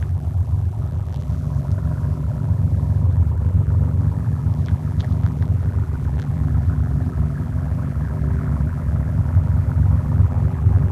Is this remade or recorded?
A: remade